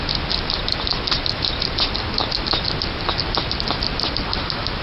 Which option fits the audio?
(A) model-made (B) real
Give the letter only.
B